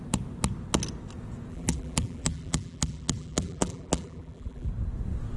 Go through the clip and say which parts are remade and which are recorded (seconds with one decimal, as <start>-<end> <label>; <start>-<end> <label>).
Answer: 0.0-1.5 recorded; 1.5-4.7 remade; 4.7-5.4 recorded